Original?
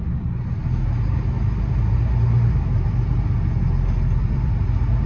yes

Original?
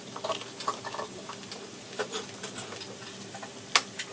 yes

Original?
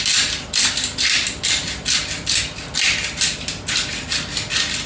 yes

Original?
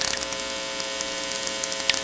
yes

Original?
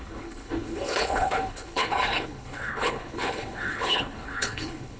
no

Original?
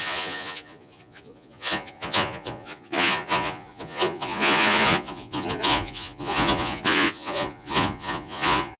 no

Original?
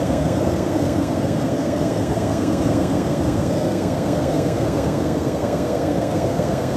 no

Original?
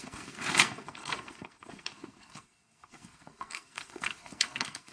no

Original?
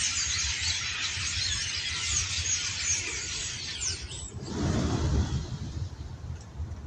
yes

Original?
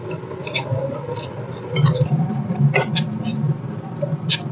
yes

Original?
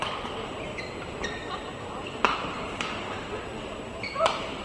yes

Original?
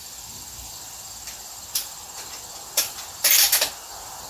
yes